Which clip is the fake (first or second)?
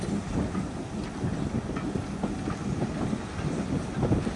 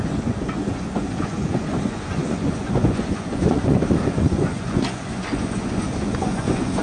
second